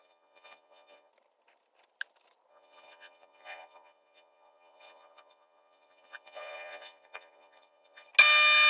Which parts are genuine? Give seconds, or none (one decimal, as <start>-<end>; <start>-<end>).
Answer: 1.1-2.5; 8.1-8.7